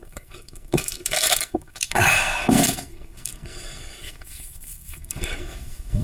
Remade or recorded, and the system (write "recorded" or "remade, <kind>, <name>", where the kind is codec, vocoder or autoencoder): remade, codec, SNAC